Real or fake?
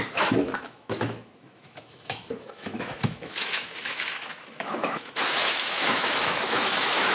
fake